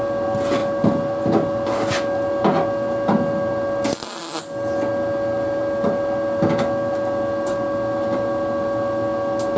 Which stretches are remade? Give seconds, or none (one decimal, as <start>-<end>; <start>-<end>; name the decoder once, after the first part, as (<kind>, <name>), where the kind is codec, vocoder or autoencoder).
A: none